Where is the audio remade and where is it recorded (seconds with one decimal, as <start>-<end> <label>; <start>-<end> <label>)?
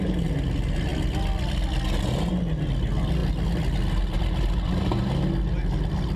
0.0-6.2 recorded